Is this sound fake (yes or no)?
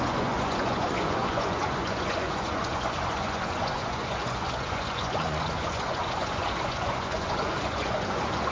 yes